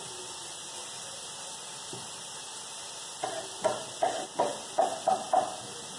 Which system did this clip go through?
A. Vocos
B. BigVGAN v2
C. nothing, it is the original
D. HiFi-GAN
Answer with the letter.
C